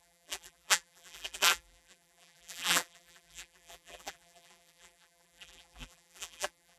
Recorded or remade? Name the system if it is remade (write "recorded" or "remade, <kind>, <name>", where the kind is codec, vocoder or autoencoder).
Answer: remade, vocoder, BigVGAN v2